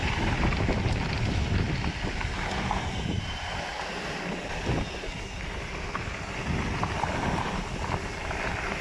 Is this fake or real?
real